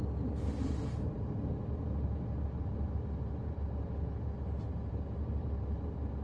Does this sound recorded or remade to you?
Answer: recorded